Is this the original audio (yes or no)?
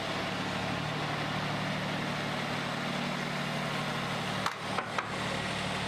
yes